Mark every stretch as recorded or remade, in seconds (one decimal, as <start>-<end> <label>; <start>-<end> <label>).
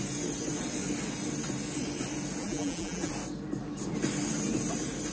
0.0-2.4 recorded; 2.4-3.1 remade; 3.1-5.1 recorded